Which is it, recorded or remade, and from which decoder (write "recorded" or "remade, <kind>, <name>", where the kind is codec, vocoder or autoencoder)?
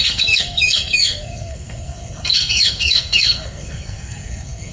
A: remade, codec, SNAC